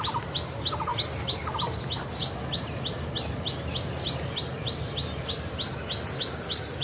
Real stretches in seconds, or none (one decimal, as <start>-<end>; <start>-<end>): 0.0-6.8